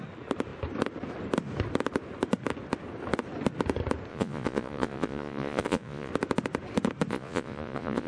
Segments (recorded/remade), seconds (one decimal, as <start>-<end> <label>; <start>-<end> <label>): 0.0-4.1 recorded; 4.1-6.1 remade; 6.1-7.1 recorded; 7.1-8.1 remade